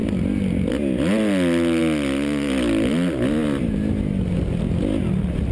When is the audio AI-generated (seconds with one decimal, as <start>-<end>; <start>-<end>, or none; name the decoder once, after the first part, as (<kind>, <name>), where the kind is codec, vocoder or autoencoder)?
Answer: none